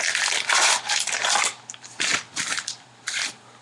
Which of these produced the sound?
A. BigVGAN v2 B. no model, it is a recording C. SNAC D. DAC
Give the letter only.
B